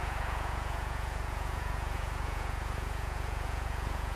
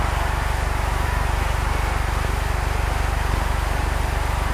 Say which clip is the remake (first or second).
first